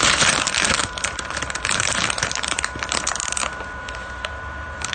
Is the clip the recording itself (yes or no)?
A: no